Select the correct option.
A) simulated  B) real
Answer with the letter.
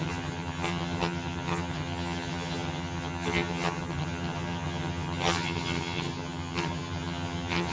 A